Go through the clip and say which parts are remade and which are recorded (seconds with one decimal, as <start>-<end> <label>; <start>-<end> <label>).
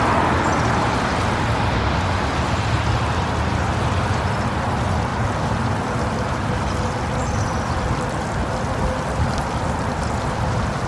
0.0-10.9 recorded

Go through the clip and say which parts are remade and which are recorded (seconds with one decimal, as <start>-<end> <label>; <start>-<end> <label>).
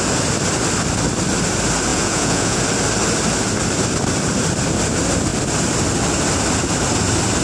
0.0-1.9 recorded; 1.9-2.6 remade; 2.6-7.4 recorded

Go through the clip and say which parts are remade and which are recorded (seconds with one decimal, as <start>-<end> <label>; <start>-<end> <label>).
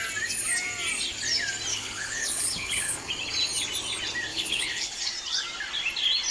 0.0-1.7 recorded; 1.7-3.1 remade; 3.1-4.3 recorded; 4.3-5.0 remade; 5.0-6.3 recorded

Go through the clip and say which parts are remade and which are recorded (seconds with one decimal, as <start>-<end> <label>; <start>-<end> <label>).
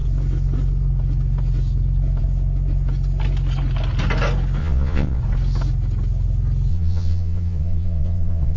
0.0-4.6 recorded; 4.6-5.2 remade; 5.2-6.7 recorded; 6.7-8.6 remade